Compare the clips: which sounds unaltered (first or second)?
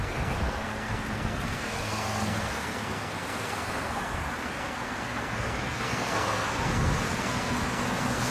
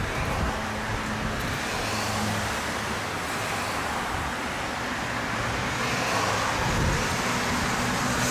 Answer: second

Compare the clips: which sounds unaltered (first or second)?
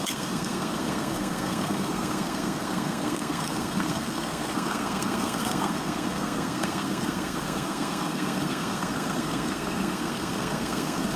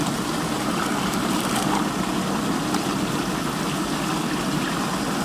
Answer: second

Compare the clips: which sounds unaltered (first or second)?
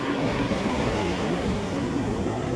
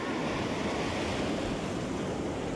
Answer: second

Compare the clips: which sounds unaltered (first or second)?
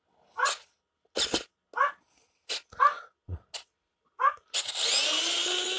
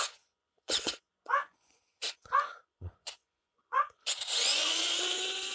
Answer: first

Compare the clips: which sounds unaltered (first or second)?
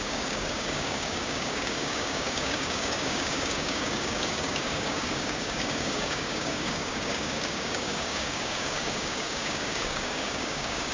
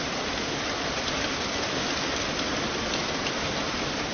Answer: second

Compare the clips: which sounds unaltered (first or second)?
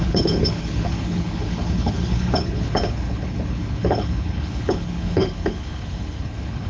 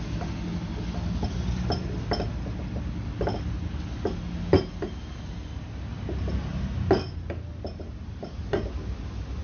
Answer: second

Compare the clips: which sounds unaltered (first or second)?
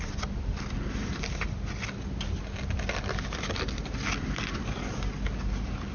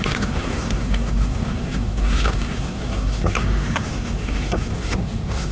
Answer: first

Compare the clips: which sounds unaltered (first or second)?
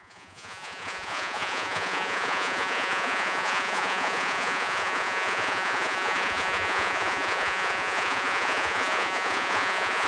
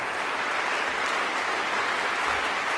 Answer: second